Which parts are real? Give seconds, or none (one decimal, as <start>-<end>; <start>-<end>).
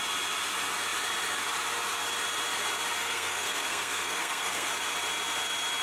0.0-3.0; 4.7-5.8